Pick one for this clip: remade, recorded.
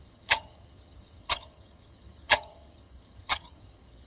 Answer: remade